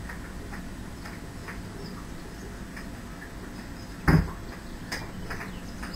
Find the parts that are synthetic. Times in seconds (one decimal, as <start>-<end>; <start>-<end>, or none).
none